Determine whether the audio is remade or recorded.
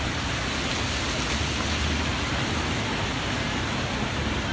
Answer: recorded